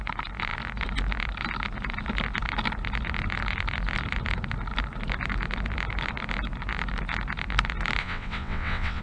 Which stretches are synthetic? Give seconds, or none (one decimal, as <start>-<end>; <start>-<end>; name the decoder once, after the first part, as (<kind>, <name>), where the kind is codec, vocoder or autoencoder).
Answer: 8.0-9.0 (vocoder, WaveNeXt)